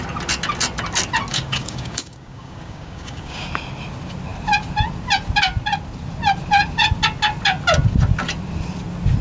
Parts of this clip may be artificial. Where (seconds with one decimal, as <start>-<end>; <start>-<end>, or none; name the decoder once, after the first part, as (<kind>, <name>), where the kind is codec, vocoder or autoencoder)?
1.3-3.5 (codec, DAC)